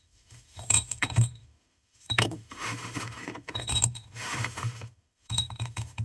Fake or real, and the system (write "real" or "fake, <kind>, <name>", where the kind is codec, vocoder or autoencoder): fake, autoencoder, DAC-VAE